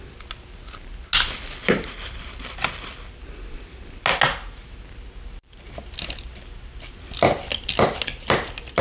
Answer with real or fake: real